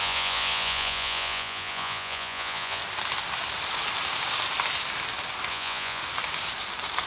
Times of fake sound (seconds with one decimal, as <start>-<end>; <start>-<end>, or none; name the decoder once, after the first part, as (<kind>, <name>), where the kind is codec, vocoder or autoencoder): 0.0-2.8 (vocoder, Vocos); 5.5-6.0

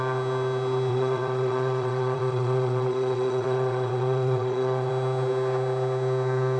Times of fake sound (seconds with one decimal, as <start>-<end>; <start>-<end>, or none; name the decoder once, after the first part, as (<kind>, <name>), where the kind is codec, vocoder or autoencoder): 0.9-4.9 (vocoder, Vocos)

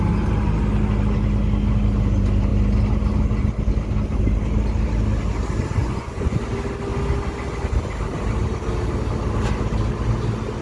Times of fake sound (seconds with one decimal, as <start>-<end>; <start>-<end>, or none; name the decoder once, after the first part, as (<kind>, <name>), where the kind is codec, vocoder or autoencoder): 5.8-6.4 (vocoder, Vocos)

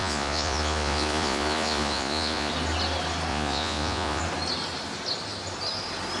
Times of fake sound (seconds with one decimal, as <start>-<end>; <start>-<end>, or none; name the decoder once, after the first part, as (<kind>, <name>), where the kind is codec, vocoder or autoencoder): 0.0-2.5 (vocoder, Vocos); 3.3-4.2

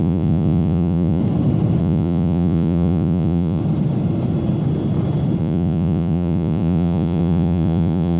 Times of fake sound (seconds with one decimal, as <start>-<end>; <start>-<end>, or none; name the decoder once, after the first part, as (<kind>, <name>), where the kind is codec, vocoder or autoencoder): 0.0-1.2 (vocoder, Vocos); 1.8-3.6; 5.4-8.2

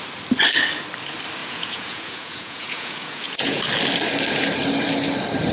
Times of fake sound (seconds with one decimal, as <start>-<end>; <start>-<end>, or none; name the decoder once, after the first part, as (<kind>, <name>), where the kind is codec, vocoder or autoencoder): 1.4-3.6 (vocoder, Vocos)